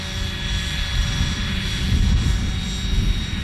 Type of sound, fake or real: real